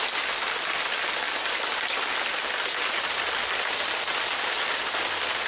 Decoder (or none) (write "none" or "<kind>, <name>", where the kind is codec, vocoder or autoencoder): none